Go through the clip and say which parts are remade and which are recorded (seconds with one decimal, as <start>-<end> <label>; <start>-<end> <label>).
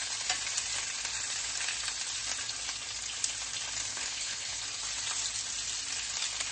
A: 0.0-3.9 recorded; 3.9-4.6 remade; 4.6-6.5 recorded